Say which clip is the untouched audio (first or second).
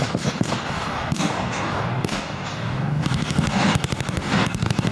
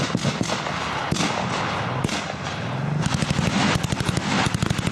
second